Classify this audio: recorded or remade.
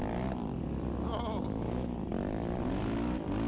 recorded